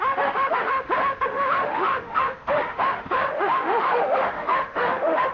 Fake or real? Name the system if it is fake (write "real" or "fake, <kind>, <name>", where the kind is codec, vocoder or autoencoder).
fake, autoencoder, DAC-VAE